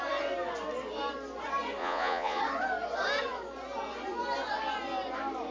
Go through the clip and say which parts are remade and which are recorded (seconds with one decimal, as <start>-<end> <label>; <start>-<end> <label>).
0.0-1.8 recorded; 1.8-2.4 remade; 2.4-5.5 recorded

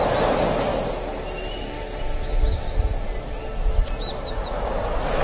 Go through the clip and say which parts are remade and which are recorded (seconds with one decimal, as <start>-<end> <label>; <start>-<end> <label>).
0.0-5.2 recorded

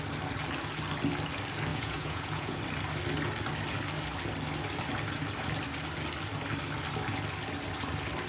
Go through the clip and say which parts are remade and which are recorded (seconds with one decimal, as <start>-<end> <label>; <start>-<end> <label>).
0.0-1.7 recorded; 1.7-2.6 remade; 2.6-8.3 recorded

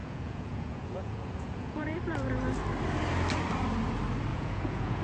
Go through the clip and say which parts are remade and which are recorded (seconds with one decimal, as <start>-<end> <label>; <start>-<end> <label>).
0.0-2.0 remade; 2.0-4.3 recorded; 4.3-5.0 remade

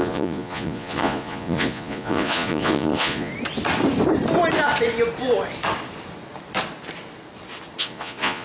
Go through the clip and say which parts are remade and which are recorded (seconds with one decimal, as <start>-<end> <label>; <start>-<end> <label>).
0.0-3.3 remade; 3.3-7.8 recorded; 7.8-8.4 remade

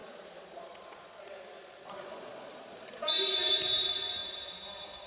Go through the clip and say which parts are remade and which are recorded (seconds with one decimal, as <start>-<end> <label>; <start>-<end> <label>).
0.0-3.1 remade; 3.1-5.1 recorded

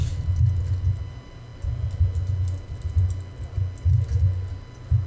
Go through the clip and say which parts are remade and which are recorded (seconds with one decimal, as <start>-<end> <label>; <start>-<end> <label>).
0.0-5.1 recorded

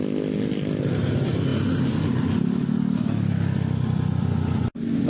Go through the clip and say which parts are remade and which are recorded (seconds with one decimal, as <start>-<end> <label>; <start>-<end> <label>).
0.0-5.1 recorded